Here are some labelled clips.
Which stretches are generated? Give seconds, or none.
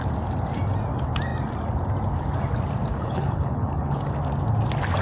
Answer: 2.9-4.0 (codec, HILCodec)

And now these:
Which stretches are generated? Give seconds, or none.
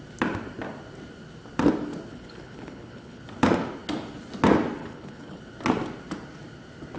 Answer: 2.1-3.2 (codec, HILCodec); 4.8-5.4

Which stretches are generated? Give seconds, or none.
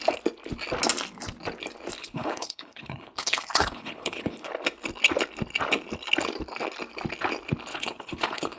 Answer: 2.0-4.5 (codec, HILCodec); 7.7-8.6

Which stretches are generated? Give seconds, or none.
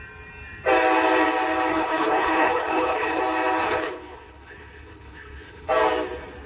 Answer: 1.7-3.2 (codec, HILCodec); 3.6-5.7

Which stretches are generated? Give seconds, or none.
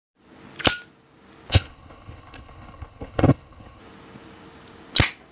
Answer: 1.5-3.8 (codec, HILCodec)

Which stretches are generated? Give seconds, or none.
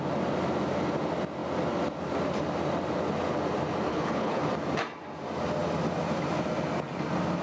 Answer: 3.9-4.4 (codec, HILCodec)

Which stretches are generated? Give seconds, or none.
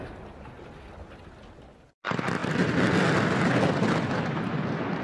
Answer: none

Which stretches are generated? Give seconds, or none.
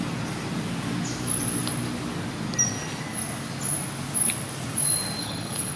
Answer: 5.2-5.8 (codec, HILCodec)